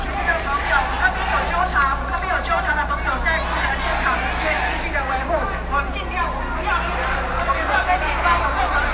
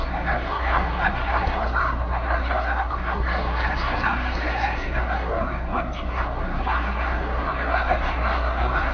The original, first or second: first